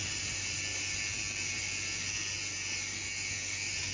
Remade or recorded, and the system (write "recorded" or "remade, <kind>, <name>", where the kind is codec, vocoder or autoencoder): recorded